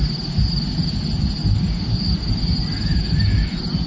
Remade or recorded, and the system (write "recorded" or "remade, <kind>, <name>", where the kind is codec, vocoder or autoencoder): recorded